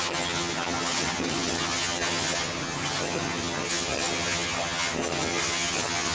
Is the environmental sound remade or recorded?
remade